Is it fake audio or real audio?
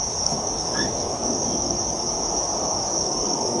fake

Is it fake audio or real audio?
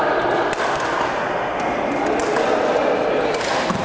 real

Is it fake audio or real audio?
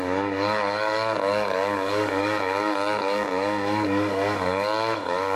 fake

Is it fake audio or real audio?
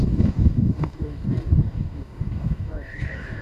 fake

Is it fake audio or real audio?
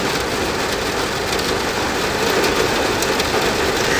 real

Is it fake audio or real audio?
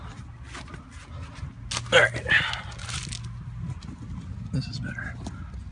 real